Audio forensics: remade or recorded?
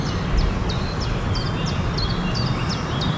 recorded